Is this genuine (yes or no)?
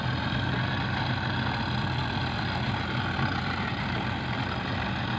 yes